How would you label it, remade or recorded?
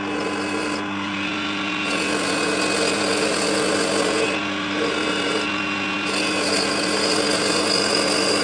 recorded